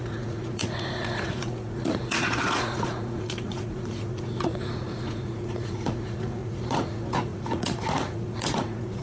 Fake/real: fake